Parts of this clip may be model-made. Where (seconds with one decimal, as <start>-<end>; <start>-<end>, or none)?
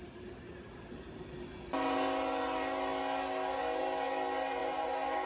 none